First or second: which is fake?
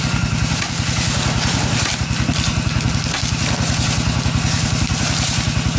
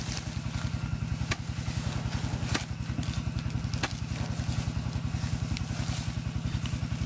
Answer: first